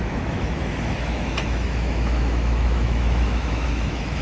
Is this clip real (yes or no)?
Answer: no